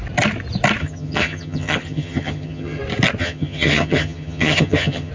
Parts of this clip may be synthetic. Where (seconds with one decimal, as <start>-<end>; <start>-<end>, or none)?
0.8-2.8; 3.2-5.1

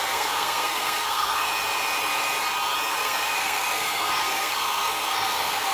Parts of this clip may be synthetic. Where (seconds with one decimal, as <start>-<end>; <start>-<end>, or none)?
0.0-1.5; 2.9-5.7